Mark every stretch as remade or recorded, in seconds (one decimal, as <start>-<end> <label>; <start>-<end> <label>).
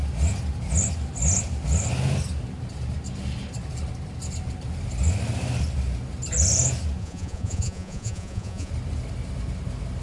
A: 0.0-7.0 recorded; 7.0-8.7 remade; 8.7-10.0 recorded